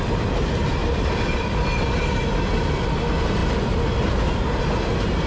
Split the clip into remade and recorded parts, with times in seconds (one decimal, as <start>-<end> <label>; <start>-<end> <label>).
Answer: 0.0-0.8 recorded; 0.8-1.7 remade; 1.7-5.3 recorded